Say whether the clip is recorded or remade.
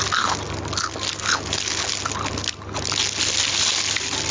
recorded